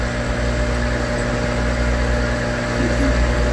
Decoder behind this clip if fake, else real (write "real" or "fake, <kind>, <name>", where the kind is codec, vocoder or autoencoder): real